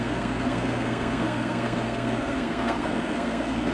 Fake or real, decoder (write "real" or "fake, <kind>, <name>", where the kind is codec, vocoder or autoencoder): fake, codec, SNAC